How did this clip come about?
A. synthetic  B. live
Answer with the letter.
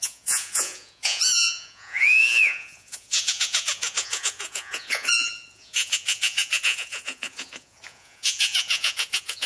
A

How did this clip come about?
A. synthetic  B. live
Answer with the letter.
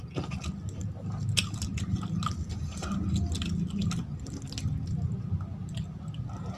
B